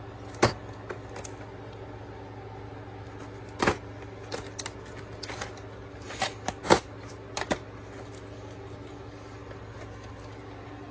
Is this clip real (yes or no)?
yes